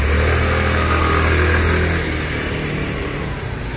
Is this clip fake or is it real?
real